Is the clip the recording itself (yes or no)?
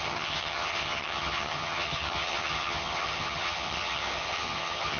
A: no